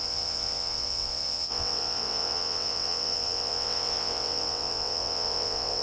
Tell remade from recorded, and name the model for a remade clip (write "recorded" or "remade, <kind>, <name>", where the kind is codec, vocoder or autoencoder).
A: remade, vocoder, WaveNeXt